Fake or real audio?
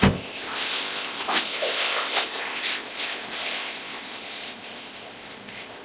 fake